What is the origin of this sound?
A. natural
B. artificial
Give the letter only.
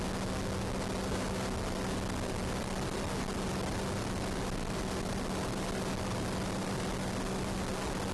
A